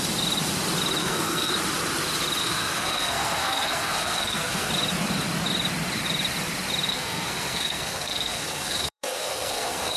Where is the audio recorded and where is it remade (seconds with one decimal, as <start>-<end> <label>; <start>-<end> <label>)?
0.0-1.0 recorded; 1.0-1.5 remade; 1.5-2.4 recorded; 2.4-4.7 remade; 4.7-6.9 recorded; 6.9-10.0 remade